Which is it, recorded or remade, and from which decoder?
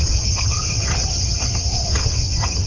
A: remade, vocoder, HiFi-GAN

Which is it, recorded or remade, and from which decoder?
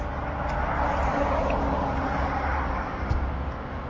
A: recorded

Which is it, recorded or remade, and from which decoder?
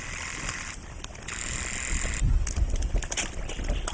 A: recorded